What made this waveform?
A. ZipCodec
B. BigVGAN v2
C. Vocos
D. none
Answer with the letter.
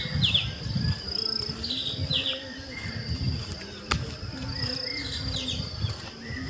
D